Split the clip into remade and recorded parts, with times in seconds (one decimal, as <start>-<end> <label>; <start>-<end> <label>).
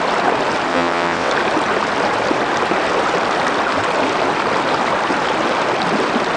0.0-0.7 recorded; 0.7-1.3 remade; 1.3-6.4 recorded